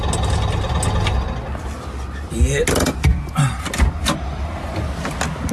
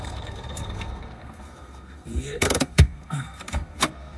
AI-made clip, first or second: second